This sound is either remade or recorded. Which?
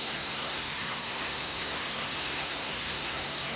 remade